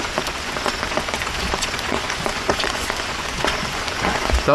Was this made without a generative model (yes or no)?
no